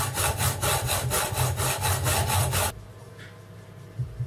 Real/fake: real